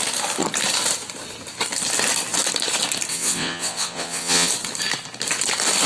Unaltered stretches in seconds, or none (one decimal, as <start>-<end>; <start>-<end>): 0.0-3.1; 4.5-5.9